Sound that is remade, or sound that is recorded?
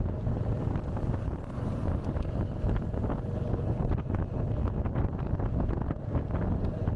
recorded